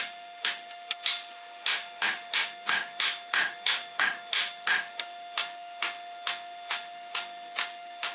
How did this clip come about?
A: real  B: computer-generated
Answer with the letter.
B